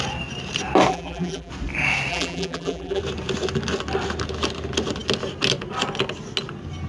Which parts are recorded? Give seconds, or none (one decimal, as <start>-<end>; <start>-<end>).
0.0-0.9; 1.5-2.1; 3.0-6.9